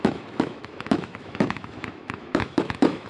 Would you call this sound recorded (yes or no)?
no